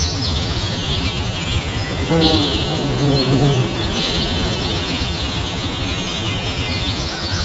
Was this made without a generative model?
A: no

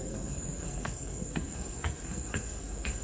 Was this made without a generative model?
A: no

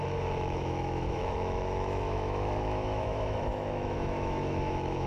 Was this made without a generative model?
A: no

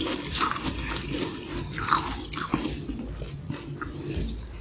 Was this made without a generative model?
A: yes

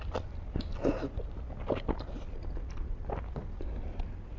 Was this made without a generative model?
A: yes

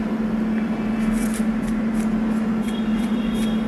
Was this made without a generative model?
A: yes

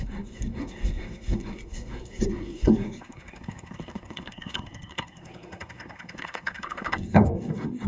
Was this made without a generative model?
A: no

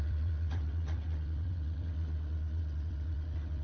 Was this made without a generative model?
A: no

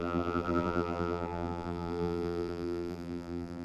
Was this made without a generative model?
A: no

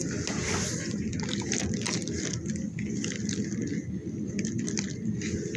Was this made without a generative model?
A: yes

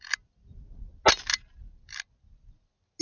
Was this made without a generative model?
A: yes